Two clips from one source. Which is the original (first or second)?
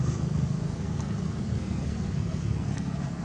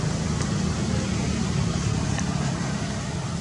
second